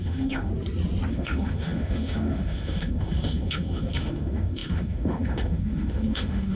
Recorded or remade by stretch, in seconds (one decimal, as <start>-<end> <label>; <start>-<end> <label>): 0.0-0.5 remade; 0.5-1.1 recorded; 1.1-6.6 remade